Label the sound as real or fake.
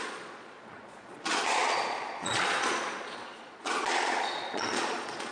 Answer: fake